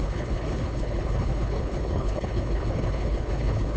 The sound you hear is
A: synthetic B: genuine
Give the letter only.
A